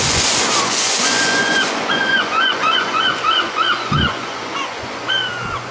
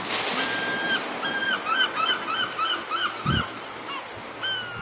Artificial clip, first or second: first